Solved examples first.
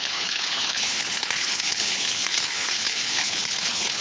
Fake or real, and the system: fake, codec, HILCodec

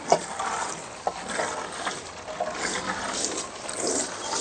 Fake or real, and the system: real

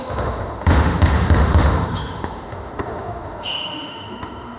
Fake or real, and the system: fake, autoencoder, DAC-VAE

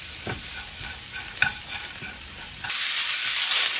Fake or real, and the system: real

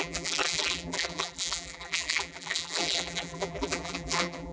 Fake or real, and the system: fake, vocoder, BigVGAN v2